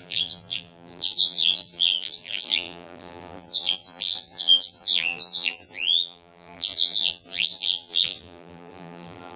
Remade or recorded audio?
remade